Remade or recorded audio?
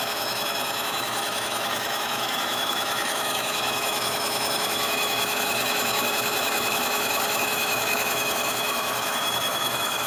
remade